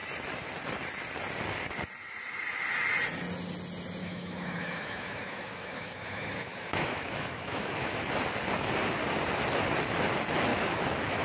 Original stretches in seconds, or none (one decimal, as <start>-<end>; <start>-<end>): 0.0-4.0; 8.0-10.5